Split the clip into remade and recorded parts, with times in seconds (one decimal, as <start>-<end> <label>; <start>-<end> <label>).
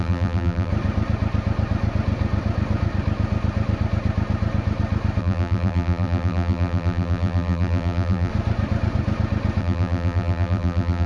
0.0-0.7 remade; 0.7-5.2 recorded; 5.2-8.3 remade; 8.3-9.6 recorded; 9.6-11.1 remade